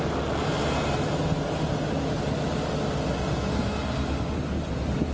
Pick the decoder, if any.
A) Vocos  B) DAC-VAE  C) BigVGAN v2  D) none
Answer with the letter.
D